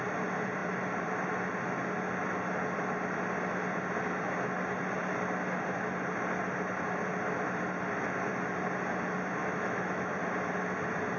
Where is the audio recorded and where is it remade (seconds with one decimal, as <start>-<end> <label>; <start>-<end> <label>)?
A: 0.0-9.4 recorded; 9.4-10.1 remade; 10.1-11.2 recorded